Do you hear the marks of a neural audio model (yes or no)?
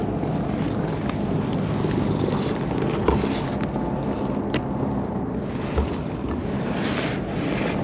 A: no